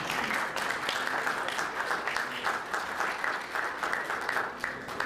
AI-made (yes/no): no